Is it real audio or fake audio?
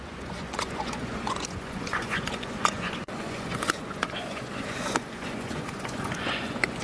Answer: fake